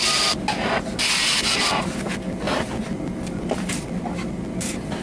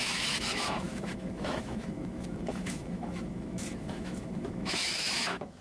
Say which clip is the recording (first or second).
first